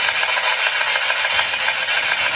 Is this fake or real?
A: real